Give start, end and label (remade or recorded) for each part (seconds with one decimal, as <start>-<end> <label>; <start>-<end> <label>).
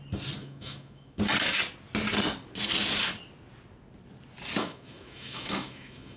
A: 0.0-0.4 recorded; 0.4-1.2 remade; 1.2-4.6 recorded; 4.6-6.2 remade